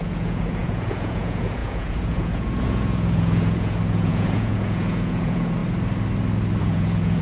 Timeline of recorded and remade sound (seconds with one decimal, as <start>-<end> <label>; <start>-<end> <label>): 0.0-5.6 remade; 5.6-6.6 recorded; 6.6-7.2 remade